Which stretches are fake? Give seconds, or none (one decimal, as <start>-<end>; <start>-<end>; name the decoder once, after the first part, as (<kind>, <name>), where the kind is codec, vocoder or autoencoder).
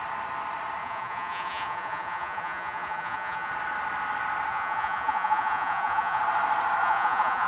0.8-3.5 (vocoder, Vocos); 4.5-6.2; 6.8-7.5